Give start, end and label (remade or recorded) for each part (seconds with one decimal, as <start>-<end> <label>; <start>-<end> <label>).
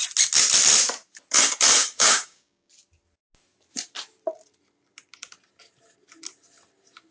0.0-1.8 recorded; 1.8-2.7 remade; 2.7-7.1 recorded